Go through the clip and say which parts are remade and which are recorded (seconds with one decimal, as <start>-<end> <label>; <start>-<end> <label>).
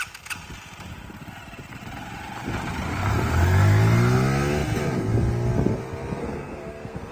0.0-6.2 recorded; 6.2-7.1 remade